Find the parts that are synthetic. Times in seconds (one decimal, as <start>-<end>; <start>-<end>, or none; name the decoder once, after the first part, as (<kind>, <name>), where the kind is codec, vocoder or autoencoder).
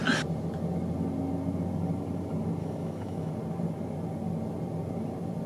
2.6-3.3 (autoencoder, DAC-VAE)